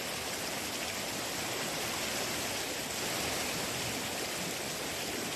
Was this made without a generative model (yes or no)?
yes